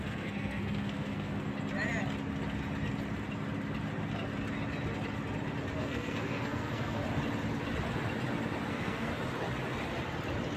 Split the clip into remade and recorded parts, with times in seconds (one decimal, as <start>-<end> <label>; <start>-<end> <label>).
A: 0.0-1.5 remade; 1.5-5.8 recorded; 5.8-7.0 remade; 7.0-8.7 recorded; 8.7-9.1 remade; 9.1-10.6 recorded